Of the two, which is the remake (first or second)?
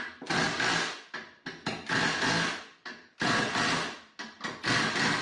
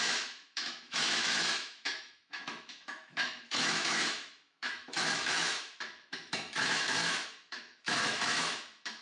second